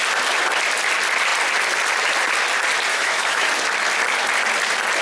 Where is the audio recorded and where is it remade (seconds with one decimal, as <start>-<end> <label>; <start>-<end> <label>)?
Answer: 0.0-2.9 recorded; 2.9-3.5 remade; 3.5-5.0 recorded